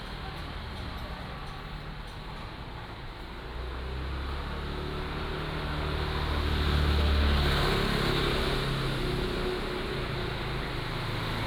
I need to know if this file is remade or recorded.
recorded